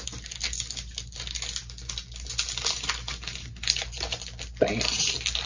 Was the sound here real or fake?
real